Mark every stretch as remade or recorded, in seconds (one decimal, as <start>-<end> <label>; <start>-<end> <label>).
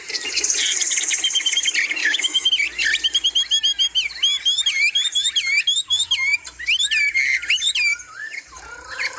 0.0-2.0 recorded; 2.0-2.5 remade; 2.5-9.2 recorded